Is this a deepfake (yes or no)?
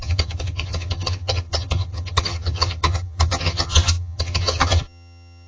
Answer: yes